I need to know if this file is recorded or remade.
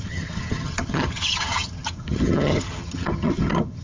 remade